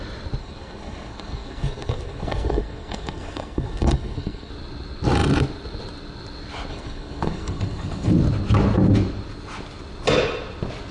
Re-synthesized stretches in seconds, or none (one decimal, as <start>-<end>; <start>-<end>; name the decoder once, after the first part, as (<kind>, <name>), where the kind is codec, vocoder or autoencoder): 0.4-4.5 (codec, SNAC); 6.7-8.1

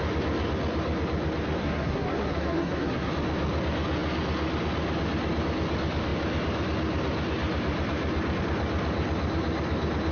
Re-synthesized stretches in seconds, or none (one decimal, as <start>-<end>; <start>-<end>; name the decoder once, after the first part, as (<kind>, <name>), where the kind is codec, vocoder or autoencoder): 1.6-3.1 (codec, SNAC)

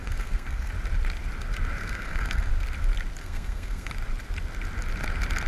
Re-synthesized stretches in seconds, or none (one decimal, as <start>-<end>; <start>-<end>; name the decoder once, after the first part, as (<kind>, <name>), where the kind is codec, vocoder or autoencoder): 0.0-0.7 (codec, SNAC); 1.8-2.5; 3.2-3.9

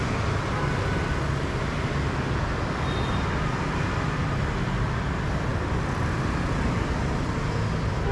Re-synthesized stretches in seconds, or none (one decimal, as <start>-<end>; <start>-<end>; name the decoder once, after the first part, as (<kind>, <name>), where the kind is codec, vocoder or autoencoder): none

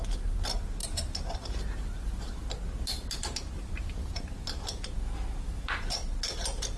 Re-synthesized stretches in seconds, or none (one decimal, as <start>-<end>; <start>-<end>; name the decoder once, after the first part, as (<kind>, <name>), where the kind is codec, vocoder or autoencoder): none

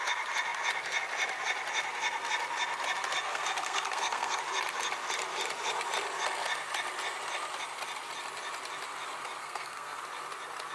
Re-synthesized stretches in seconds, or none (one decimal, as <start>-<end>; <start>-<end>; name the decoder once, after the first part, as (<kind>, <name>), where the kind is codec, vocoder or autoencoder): 3.3-4.4 (codec, SNAC); 9.4-10.0